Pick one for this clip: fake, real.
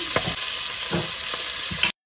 real